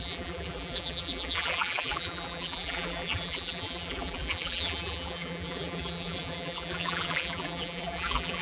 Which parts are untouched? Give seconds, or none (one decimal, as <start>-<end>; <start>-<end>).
none